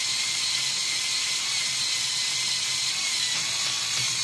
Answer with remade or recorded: recorded